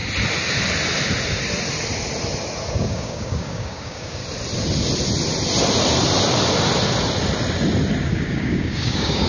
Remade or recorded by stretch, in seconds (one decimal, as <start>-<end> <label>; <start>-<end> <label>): 0.0-2.7 recorded; 2.7-4.2 remade; 4.2-8.0 recorded; 8.0-9.3 remade